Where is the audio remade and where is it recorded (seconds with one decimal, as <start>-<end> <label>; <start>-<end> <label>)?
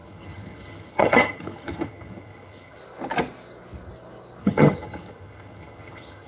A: 0.0-2.8 remade; 2.8-4.4 recorded; 4.4-6.3 remade